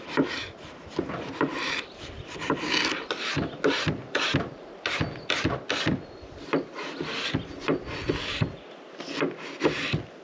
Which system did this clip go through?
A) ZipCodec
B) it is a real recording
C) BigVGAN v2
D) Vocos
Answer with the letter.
B